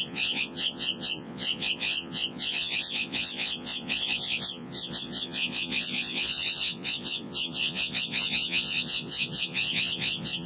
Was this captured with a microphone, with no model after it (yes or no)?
no